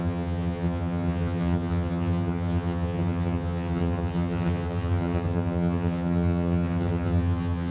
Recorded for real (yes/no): no